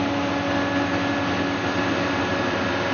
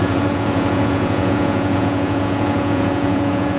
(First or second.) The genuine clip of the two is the first